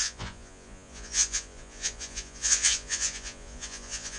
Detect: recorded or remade remade